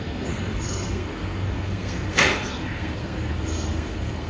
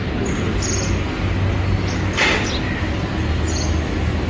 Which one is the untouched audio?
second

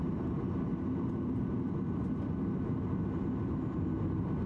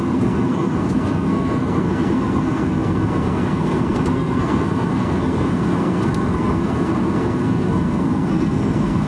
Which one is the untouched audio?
first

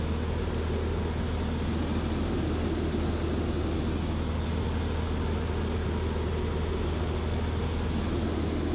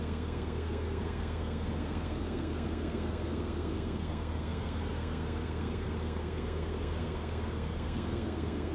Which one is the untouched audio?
first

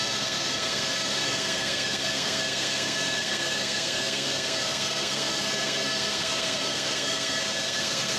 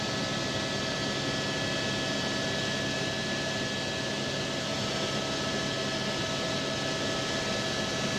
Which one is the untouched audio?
second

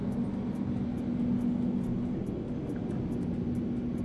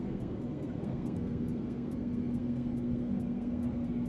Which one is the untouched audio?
first